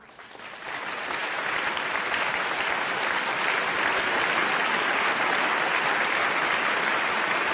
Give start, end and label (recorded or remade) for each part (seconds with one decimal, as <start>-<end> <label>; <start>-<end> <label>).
0.0-7.5 recorded